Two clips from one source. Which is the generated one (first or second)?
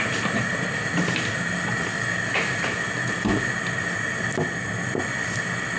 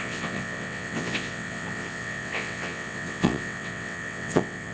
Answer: second